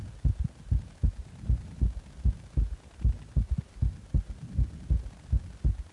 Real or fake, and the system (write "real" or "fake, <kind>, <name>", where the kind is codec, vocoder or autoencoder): real